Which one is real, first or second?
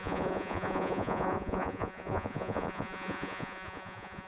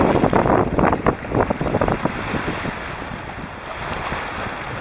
second